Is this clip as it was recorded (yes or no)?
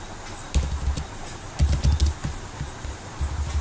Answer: yes